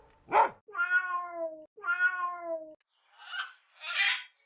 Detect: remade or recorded recorded